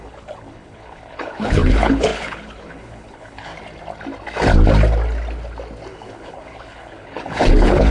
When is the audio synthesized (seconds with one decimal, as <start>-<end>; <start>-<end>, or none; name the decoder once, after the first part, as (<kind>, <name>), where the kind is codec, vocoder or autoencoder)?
0.0-3.5 (codec, HILCodec); 5.9-7.9